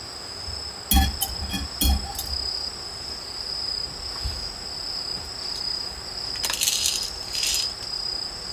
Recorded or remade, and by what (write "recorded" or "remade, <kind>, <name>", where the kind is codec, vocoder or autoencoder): recorded